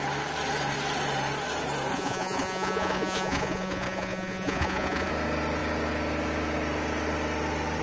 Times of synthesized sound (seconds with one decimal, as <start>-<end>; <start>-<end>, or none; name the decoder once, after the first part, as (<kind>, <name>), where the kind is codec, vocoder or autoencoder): 1.9-5.1 (vocoder, Vocos)